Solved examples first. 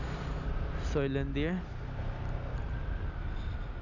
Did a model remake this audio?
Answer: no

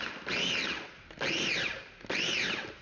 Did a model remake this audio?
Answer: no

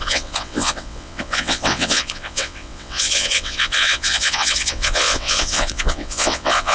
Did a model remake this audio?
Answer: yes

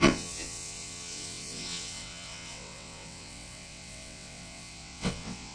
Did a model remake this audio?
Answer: yes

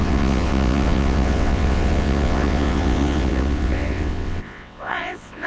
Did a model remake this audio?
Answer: yes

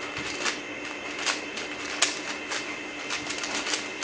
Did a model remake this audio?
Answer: no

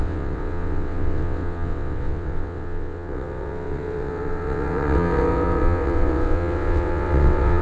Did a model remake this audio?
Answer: yes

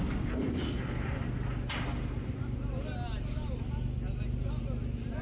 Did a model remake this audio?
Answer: no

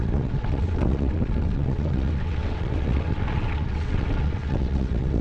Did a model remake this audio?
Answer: yes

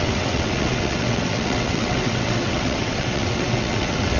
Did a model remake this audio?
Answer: yes